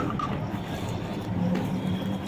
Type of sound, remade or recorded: recorded